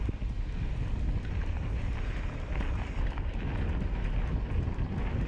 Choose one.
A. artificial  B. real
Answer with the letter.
B